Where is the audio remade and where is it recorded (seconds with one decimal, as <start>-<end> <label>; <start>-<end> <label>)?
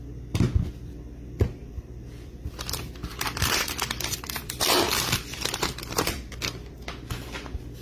0.0-1.6 recorded; 1.6-6.3 remade; 6.3-7.8 recorded